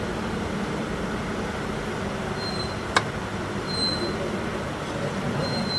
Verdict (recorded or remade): recorded